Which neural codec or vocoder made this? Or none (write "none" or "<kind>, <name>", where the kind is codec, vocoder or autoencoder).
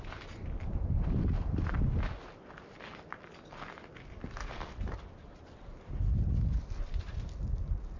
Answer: none